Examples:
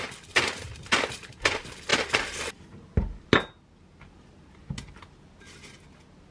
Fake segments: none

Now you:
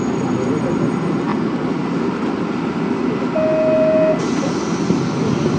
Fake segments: none

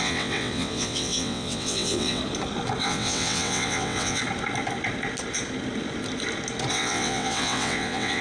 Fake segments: 0.0-2.2 (vocoder, WaveNeXt); 2.8-4.2; 6.7-8.2